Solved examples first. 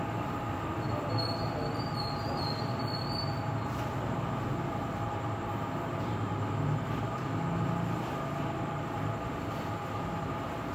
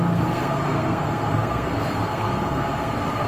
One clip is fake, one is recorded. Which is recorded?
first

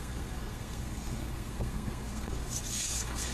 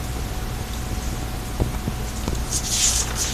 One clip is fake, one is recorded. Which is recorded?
second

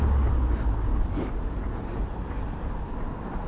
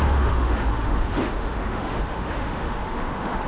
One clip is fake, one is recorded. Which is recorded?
first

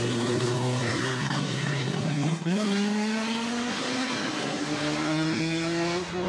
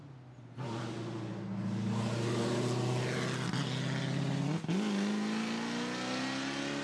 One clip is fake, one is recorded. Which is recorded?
second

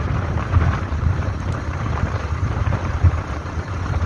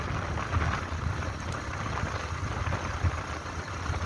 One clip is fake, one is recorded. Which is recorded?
second